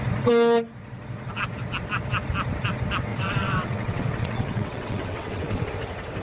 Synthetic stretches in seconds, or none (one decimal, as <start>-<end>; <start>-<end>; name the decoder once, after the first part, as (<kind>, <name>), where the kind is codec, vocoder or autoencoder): 3.1-5.7 (vocoder, WaveNeXt)